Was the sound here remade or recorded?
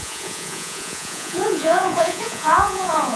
remade